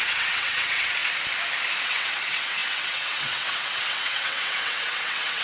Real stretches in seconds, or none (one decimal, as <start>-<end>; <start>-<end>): 1.0-1.8

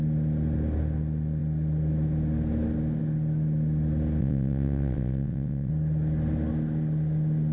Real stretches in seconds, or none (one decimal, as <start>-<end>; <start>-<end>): 0.0-4.2; 5.7-7.5